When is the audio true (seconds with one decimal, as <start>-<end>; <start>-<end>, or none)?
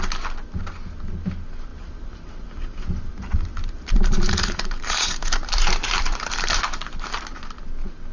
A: 0.0-1.7; 6.6-8.1